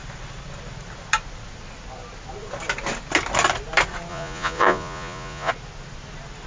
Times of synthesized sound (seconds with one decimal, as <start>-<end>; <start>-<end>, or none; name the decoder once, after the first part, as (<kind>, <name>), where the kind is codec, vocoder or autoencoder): 4.1-5.5 (vocoder, Vocos)